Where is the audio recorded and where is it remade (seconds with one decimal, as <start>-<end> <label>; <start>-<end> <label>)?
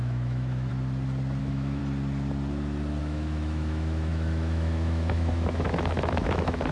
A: 0.0-0.7 remade; 0.7-1.4 recorded; 1.4-1.8 remade; 1.8-3.0 recorded; 3.0-6.7 remade